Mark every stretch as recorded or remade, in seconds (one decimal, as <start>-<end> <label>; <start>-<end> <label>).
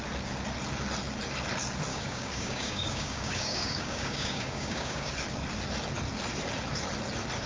0.0-1.9 recorded; 1.9-5.1 remade; 5.1-7.5 recorded